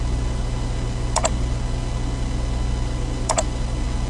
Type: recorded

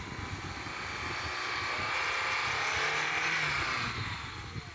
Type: recorded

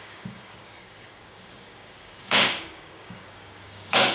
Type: remade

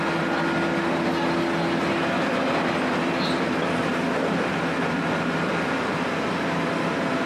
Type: recorded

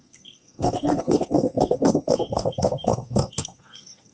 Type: remade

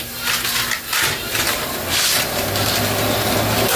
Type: recorded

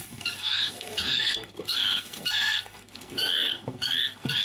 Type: remade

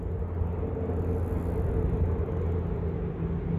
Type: recorded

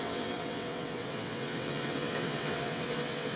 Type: remade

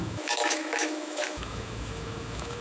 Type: remade